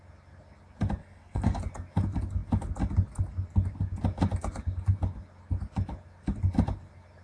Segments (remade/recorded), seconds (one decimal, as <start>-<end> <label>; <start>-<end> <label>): 0.0-1.0 recorded; 1.0-1.6 remade; 1.6-7.2 recorded